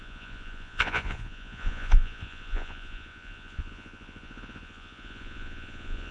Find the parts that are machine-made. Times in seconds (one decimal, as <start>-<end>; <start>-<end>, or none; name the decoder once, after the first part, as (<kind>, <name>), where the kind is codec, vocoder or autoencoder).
0.0-6.1 (vocoder, Vocos)